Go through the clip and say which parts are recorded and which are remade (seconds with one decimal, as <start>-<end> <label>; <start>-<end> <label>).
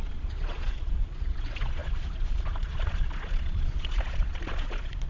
0.0-5.1 remade